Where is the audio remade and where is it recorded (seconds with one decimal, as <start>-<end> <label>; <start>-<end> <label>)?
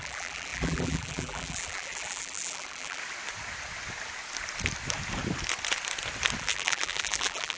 0.0-3.0 remade; 3.0-6.4 recorded; 6.4-7.6 remade